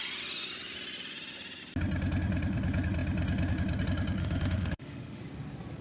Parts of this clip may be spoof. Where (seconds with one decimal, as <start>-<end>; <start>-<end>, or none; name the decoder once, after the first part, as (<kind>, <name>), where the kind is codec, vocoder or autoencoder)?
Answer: 4.2-5.2 (autoencoder, DAC-VAE)